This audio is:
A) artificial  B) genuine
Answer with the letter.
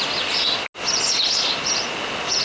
B